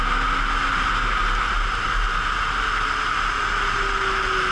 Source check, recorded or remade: recorded